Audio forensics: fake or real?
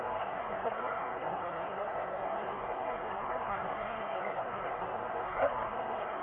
fake